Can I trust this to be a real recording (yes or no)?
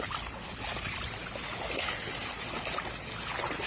yes